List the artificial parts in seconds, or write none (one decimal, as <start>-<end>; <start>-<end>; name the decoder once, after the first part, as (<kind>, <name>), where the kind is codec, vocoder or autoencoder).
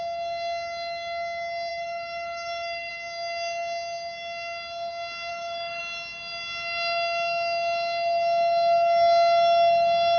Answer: 1.7-2.9 (autoencoder, DAC-VAE); 5.3-5.8